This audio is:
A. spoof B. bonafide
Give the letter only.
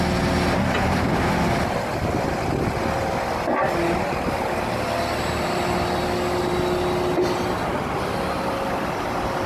B